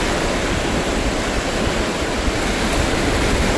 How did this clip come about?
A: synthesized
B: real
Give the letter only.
B